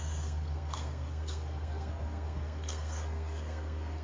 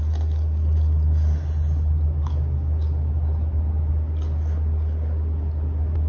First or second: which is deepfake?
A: first